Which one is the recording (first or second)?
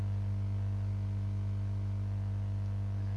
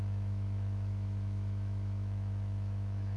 first